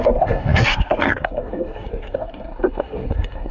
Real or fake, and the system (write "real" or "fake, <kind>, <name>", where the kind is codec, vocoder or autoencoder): fake, codec, SNAC